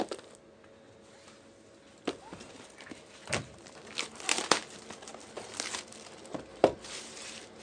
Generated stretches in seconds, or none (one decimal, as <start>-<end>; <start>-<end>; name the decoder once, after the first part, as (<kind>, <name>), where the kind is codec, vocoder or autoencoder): 6.3-7.6 (vocoder, BigVGAN v2)